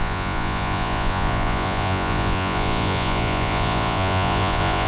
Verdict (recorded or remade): remade